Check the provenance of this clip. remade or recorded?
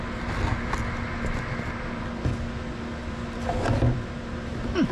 recorded